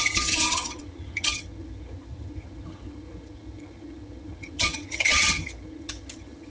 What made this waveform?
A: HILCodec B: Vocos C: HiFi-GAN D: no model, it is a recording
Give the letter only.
C